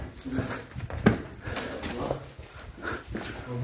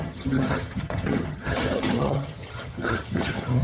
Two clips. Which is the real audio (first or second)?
first